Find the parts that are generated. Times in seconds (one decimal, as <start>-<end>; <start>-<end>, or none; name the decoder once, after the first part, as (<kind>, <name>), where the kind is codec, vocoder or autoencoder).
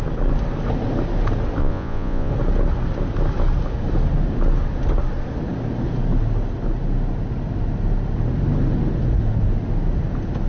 1.6-2.3 (vocoder, Vocos)